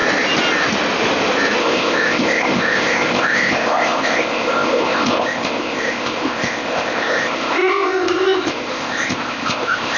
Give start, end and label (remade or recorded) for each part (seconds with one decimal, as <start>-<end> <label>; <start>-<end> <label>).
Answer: 0.0-1.6 recorded; 1.6-10.0 remade